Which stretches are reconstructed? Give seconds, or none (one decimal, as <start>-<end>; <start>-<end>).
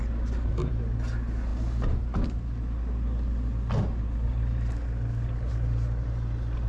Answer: none